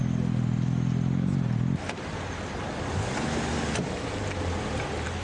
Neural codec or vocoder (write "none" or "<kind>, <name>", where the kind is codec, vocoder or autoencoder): none